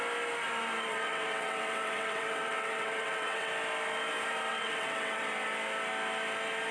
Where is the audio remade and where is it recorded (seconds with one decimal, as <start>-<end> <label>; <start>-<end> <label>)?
0.0-0.9 recorded; 0.9-3.5 remade; 3.5-4.5 recorded; 4.5-5.2 remade; 5.2-6.7 recorded